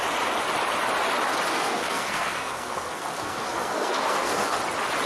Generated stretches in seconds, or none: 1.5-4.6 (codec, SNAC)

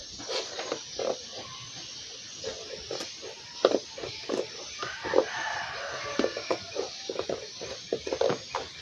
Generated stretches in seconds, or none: none

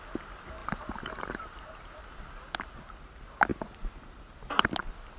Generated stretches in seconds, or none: 0.6-2.0 (vocoder, BigVGAN v2)

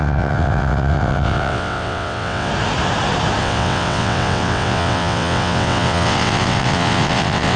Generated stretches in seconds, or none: 0.0-2.5 (vocoder, WaveNeXt); 3.4-7.6

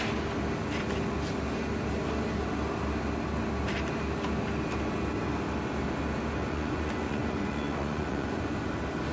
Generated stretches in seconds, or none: 6.4-8.4 (vocoder, Vocos)